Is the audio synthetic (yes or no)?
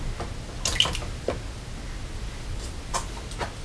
no